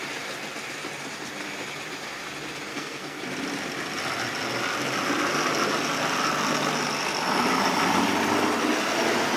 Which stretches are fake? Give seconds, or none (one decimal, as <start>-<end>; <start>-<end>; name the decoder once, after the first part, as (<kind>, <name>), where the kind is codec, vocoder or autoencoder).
2.7-3.2 (codec, SNAC)